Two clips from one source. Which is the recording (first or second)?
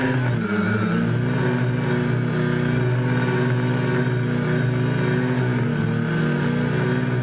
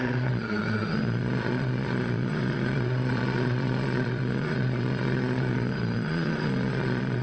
first